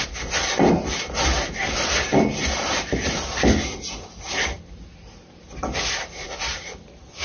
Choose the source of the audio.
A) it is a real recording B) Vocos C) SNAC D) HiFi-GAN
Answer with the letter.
A